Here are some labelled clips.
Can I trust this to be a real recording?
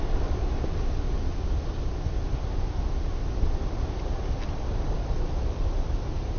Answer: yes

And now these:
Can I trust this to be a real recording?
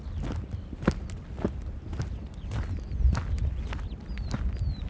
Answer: yes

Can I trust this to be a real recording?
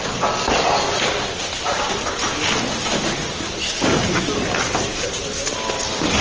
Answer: yes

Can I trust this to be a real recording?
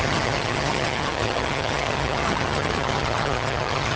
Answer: no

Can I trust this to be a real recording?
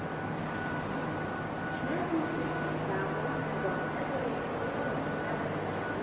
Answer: yes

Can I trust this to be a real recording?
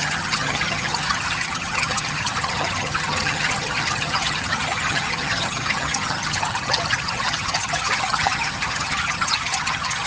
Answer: no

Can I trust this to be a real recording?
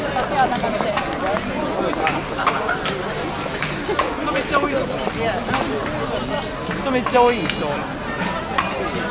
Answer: yes